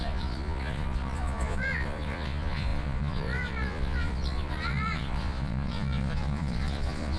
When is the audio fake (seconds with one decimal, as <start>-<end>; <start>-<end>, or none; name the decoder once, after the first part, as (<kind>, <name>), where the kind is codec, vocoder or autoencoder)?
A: 0.0-7.2 (vocoder, Vocos)